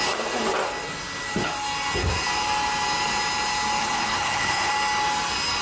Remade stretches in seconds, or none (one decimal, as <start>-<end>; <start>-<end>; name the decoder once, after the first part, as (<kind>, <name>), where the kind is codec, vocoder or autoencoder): 3.8-4.7 (codec, HILCodec)